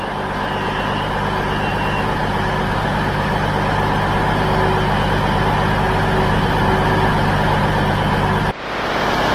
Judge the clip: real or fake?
real